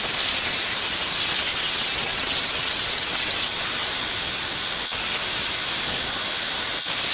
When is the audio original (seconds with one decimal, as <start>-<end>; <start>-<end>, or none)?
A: 0.0-1.5; 3.6-7.1